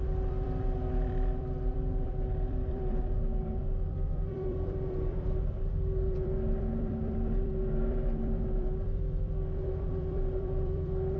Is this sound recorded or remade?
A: remade